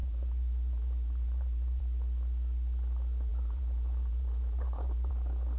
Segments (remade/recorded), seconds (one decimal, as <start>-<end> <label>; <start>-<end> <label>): 0.0-1.8 remade; 1.8-3.3 recorded; 3.3-5.1 remade; 5.1-5.6 recorded